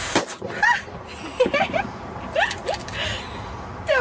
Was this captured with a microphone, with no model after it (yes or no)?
yes